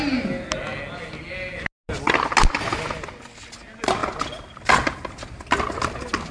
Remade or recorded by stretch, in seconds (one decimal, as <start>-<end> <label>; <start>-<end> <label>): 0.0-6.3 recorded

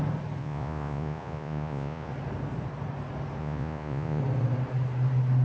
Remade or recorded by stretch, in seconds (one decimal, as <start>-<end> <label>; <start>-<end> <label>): 0.0-0.4 recorded; 0.4-2.1 remade; 2.1-3.4 recorded; 3.4-4.2 remade; 4.2-5.4 recorded

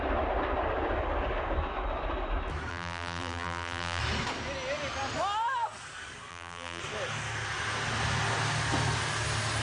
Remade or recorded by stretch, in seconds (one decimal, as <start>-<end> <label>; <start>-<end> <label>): 0.0-2.7 recorded; 2.7-4.0 remade; 4.0-6.3 recorded; 6.3-6.8 remade; 6.8-9.6 recorded

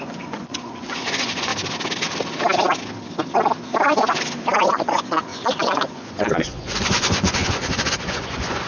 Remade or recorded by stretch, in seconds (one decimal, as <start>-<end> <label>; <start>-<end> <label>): 0.0-1.5 remade; 1.5-4.7 recorded; 4.7-8.7 remade

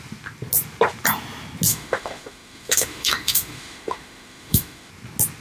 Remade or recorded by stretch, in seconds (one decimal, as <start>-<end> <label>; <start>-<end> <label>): 0.0-1.7 recorded; 1.7-4.9 remade; 4.9-5.4 recorded